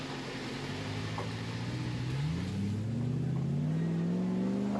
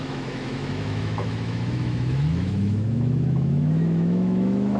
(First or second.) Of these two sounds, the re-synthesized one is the second